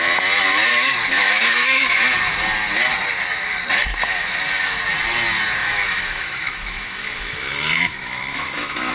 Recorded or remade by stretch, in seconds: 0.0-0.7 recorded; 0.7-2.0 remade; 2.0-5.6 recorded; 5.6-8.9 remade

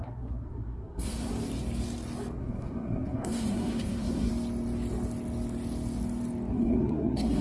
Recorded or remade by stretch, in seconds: 0.0-1.3 remade; 1.3-2.4 recorded; 2.4-4.3 remade; 4.3-6.5 recorded; 6.5-7.4 remade

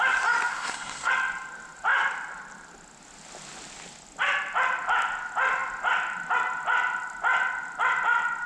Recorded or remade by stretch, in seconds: 0.0-0.5 recorded; 0.5-1.1 remade; 1.1-8.5 recorded

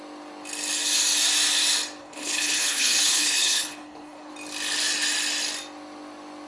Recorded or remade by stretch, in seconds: 0.0-2.0 recorded; 2.0-4.3 remade; 4.3-6.5 recorded

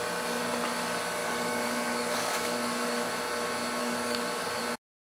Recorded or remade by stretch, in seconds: 0.0-1.2 recorded; 1.2-3.1 remade; 3.1-3.8 recorded; 3.8-4.6 remade; 4.6-5.1 recorded

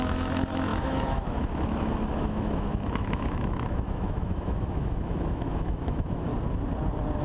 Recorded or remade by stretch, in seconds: 0.0-6.3 remade; 6.3-7.2 recorded

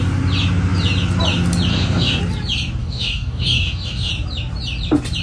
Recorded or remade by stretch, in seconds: 0.0-1.7 recorded; 1.7-2.2 remade; 2.2-2.8 recorded; 2.8-4.1 remade; 4.1-5.2 recorded